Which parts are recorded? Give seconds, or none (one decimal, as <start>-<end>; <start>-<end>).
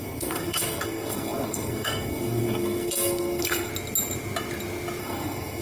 3.7-5.0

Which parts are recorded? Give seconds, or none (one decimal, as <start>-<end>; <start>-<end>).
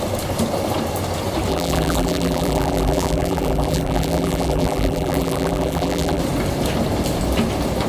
0.0-1.5; 6.2-7.9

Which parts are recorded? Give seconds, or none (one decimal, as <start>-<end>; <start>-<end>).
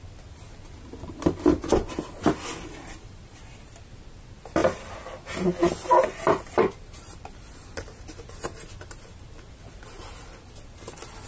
0.0-11.3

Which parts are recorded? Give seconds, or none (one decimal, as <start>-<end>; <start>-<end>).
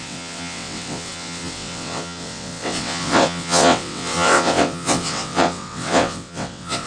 none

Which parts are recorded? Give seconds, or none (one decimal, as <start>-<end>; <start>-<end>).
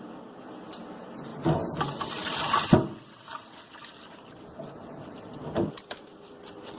0.0-6.8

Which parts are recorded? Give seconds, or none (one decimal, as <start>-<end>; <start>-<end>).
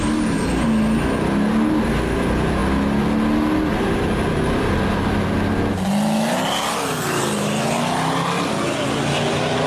0.0-9.7